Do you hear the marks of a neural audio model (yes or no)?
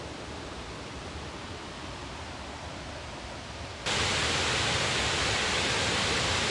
no